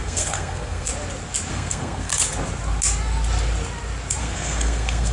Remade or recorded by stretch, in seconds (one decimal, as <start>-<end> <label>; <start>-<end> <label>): 0.0-0.9 remade; 0.9-1.5 recorded; 1.5-2.1 remade; 2.1-4.2 recorded; 4.2-5.1 remade